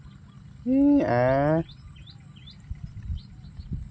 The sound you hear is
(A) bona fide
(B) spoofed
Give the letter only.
A